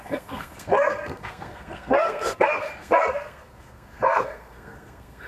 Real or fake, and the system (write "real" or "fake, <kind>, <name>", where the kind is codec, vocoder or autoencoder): fake, codec, SNAC